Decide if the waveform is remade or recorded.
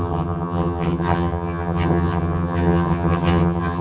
remade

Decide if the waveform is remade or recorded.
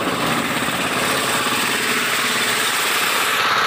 recorded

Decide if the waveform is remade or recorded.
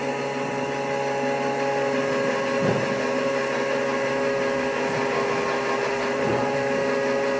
recorded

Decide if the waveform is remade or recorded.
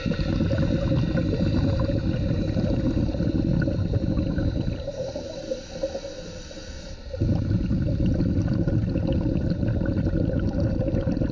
recorded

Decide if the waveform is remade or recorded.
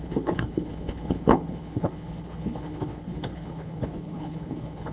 remade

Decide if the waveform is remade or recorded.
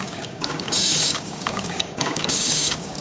remade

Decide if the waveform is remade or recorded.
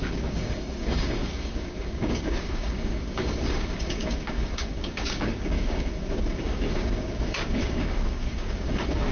remade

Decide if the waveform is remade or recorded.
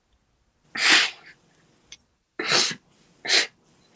recorded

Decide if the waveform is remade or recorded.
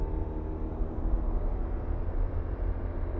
remade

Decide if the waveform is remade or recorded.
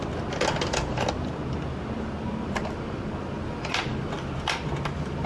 recorded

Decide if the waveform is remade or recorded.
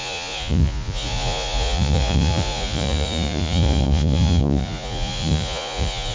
remade